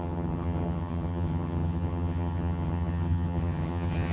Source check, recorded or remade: remade